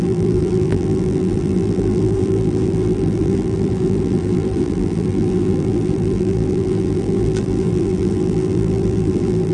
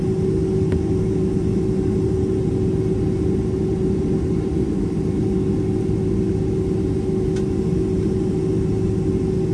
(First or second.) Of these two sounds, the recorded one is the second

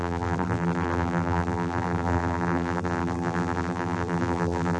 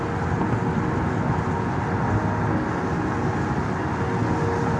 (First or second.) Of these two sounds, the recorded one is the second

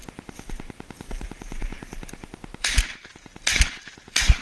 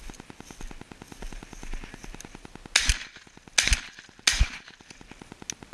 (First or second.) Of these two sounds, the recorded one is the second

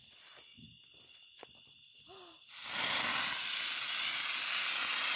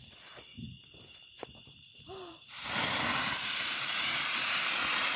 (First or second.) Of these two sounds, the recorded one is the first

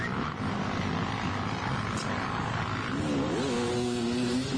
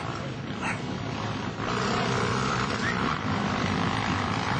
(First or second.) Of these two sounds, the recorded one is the first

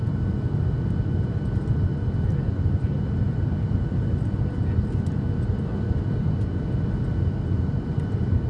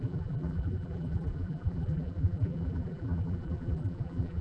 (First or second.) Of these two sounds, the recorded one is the first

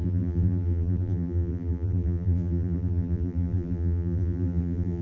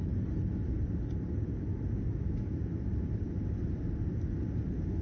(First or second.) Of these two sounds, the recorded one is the second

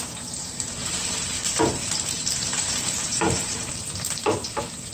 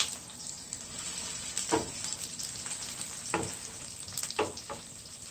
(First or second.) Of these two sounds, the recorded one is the second